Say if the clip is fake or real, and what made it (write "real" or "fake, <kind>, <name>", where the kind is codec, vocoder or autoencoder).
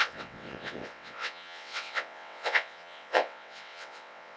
fake, vocoder, WaveNeXt